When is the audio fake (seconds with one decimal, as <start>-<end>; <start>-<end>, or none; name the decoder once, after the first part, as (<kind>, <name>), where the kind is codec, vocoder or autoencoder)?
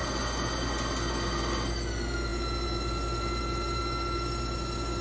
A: none